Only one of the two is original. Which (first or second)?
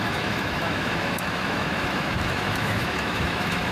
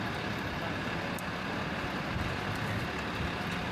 second